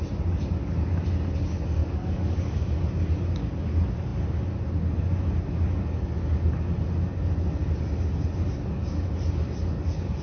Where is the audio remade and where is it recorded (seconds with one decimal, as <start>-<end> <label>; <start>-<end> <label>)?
0.0-1.8 recorded; 1.8-2.7 remade; 2.7-10.2 recorded